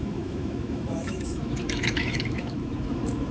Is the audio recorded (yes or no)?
no